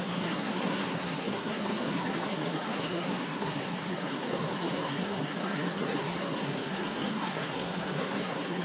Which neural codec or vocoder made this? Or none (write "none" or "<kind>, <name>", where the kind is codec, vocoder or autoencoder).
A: codec, SNAC